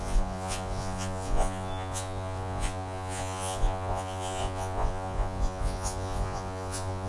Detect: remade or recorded remade